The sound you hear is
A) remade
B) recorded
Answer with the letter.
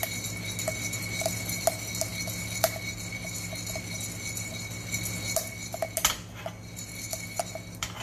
B